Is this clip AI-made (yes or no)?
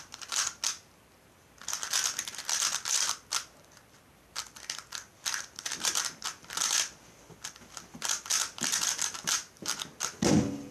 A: no